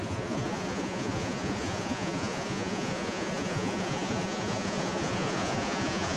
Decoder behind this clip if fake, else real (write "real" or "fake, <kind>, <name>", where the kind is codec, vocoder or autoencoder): fake, vocoder, Vocos